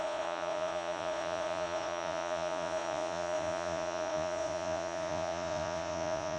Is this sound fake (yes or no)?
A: yes